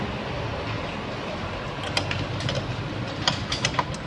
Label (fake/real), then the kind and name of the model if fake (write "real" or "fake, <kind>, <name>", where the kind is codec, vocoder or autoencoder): real